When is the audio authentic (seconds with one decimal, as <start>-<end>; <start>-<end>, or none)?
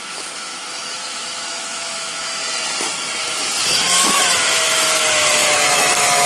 2.4-3.2